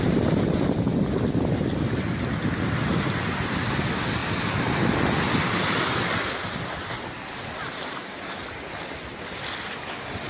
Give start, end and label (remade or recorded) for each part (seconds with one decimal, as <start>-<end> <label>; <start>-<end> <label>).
0.0-7.6 recorded; 7.6-8.3 remade; 8.3-10.3 recorded

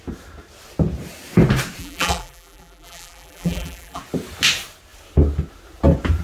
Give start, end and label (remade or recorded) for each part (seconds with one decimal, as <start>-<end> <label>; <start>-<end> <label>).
0.0-1.8 recorded; 1.8-4.0 remade; 4.0-6.2 recorded

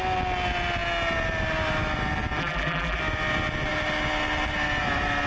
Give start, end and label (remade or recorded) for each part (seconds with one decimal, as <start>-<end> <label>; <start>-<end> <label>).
0.0-2.4 recorded; 2.4-3.0 remade; 3.0-5.3 recorded

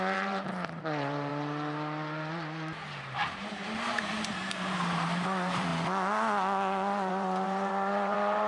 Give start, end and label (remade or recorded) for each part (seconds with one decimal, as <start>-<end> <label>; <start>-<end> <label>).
0.0-1.3 remade; 1.3-3.2 recorded; 3.2-5.7 remade; 5.7-7.1 recorded; 7.1-8.5 remade

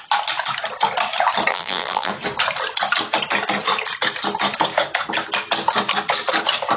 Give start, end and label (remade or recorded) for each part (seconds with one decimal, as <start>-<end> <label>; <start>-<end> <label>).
0.0-1.5 recorded; 1.5-2.1 remade; 2.1-6.8 recorded

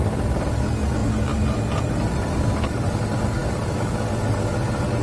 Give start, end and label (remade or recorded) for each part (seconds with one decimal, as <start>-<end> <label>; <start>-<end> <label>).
0.0-5.0 recorded